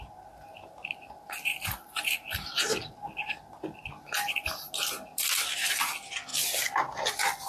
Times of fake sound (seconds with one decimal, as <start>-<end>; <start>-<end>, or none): 6.3-6.8